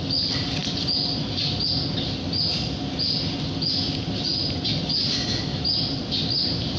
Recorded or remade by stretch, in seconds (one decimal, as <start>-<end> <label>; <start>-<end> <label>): 0.0-6.8 recorded